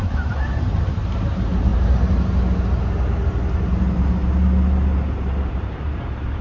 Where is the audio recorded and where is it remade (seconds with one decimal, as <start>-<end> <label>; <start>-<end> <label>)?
0.0-1.7 remade; 1.7-5.5 recorded; 5.5-6.4 remade